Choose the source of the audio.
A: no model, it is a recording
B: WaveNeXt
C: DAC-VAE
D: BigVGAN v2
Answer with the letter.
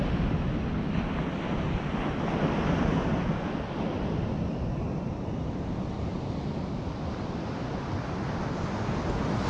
A